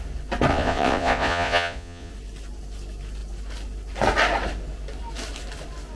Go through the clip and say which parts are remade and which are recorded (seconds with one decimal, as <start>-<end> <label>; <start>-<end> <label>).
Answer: 0.0-0.5 recorded; 0.5-2.1 remade; 2.1-6.0 recorded